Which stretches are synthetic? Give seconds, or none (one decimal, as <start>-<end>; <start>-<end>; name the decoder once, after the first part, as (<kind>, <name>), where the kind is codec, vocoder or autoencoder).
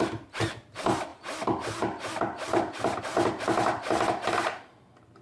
none